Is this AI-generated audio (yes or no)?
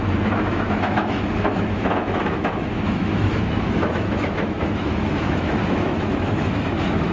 yes